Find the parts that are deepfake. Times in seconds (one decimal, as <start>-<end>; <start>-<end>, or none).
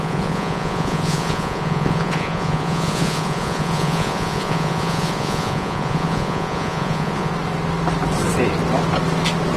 0.0-7.3